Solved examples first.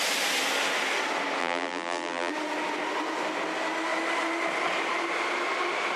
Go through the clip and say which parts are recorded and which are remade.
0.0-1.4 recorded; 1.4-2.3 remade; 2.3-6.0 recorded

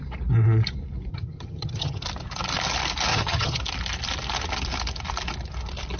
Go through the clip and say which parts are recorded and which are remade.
0.0-1.1 recorded; 1.1-2.0 remade; 2.0-3.1 recorded; 3.1-3.6 remade; 3.6-6.0 recorded

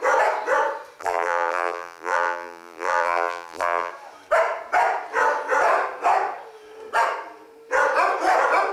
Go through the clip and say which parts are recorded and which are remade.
0.0-1.0 recorded; 1.0-3.9 remade; 3.9-8.7 recorded

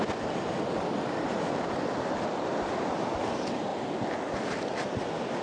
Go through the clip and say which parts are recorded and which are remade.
0.0-5.4 recorded

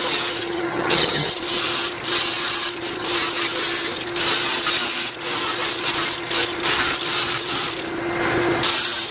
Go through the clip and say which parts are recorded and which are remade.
0.0-0.4 recorded; 0.4-1.4 remade; 1.4-9.1 recorded

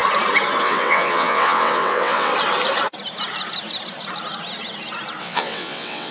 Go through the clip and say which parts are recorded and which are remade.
0.0-0.6 recorded; 0.6-2.3 remade; 2.3-5.2 recorded; 5.2-6.1 remade

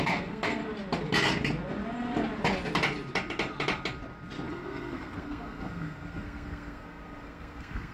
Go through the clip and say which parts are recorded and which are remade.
0.0-0.6 remade; 0.6-4.5 recorded; 4.5-7.9 remade